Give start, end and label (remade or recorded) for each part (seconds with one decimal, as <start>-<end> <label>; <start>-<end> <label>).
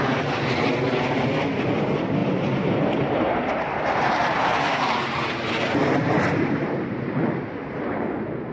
0.0-2.2 recorded; 2.2-7.2 remade; 7.2-8.5 recorded